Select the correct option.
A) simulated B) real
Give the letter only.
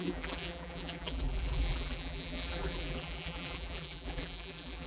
A